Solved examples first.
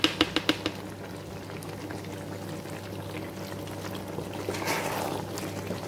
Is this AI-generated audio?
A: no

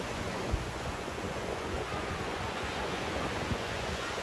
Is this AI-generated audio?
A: yes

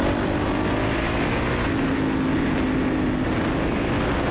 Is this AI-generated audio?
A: no